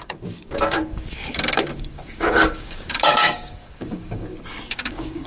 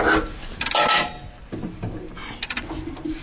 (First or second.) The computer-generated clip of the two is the first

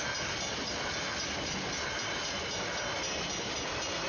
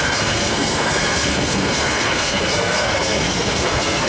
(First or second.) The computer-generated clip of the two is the second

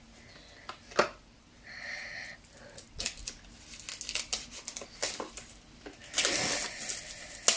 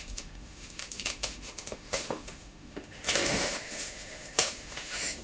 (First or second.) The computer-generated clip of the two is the second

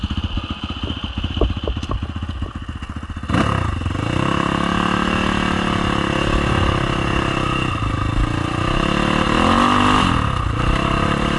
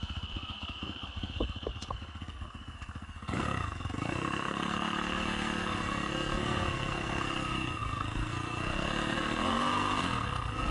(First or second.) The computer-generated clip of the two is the second